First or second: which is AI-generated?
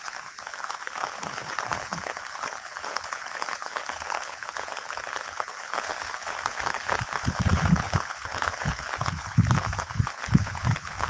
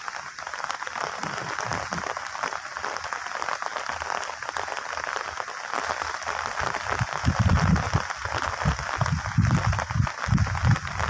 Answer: first